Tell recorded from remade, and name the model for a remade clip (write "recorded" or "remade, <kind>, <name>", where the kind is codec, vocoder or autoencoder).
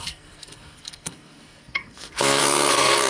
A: remade, codec, SNAC